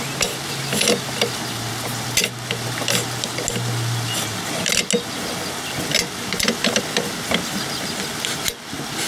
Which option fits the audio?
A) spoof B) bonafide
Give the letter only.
B